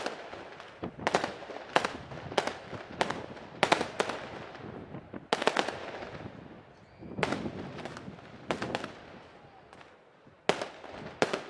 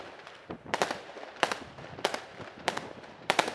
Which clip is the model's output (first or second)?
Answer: second